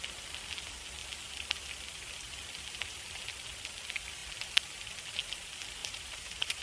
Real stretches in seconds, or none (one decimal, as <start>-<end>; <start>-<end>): 0.0-5.8